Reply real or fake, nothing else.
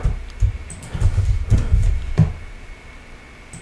real